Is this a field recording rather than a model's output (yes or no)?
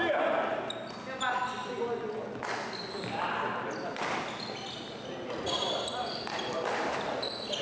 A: yes